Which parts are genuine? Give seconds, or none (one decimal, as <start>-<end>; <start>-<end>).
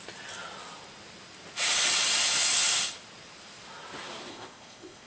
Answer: 0.0-4.3